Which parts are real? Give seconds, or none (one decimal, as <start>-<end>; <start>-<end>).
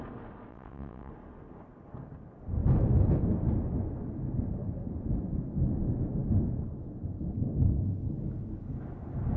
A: 0.0-0.5; 1.1-9.4